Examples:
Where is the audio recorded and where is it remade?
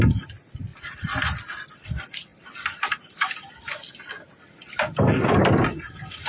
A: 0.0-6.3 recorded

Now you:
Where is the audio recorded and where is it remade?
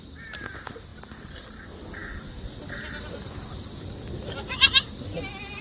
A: 0.0-5.6 recorded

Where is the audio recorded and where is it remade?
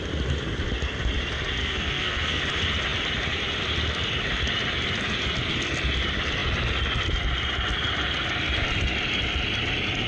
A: 0.0-1.6 recorded; 1.6-2.4 remade; 2.4-10.1 recorded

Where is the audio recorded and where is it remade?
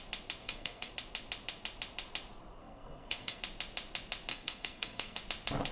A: 0.0-0.4 recorded; 0.4-0.9 remade; 0.9-2.6 recorded; 2.6-3.4 remade; 3.4-4.3 recorded; 4.3-5.2 remade; 5.2-5.7 recorded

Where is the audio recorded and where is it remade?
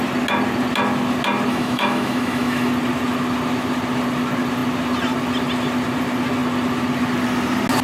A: 0.0-1.5 recorded; 1.5-2.7 remade; 2.7-7.8 recorded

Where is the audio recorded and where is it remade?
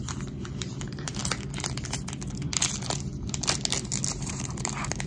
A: 0.0-1.2 remade; 1.2-4.1 recorded; 4.1-5.1 remade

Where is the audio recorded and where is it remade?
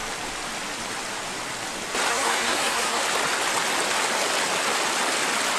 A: 0.0-2.1 recorded; 2.1-3.0 remade; 3.0-5.6 recorded